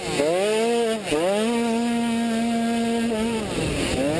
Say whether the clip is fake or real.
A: real